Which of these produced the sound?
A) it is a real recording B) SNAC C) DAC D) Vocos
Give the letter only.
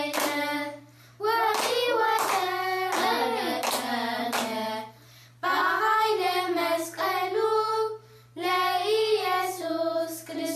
A